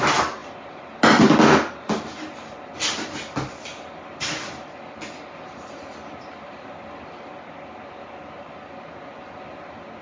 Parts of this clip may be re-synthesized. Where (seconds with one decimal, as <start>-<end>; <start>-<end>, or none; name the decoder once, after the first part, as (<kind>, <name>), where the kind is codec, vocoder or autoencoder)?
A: none